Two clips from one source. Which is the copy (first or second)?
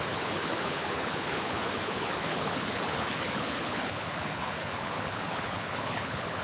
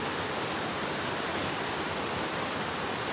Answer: first